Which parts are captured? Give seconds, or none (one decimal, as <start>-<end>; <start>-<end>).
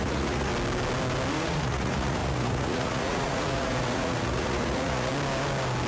0.5-1.3; 5.1-5.9